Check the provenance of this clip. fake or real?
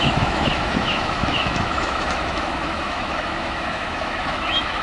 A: fake